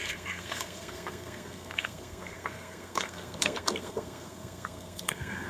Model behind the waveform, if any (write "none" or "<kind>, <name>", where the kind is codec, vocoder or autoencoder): codec, SNAC